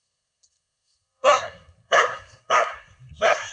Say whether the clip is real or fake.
fake